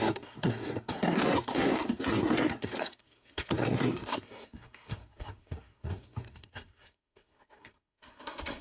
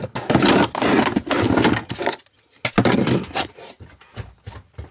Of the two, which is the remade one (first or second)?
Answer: first